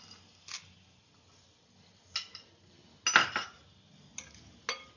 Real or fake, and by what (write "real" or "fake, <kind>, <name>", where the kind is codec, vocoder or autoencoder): real